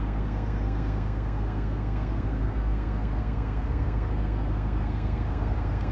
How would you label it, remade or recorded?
remade